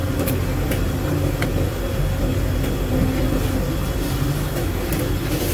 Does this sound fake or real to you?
real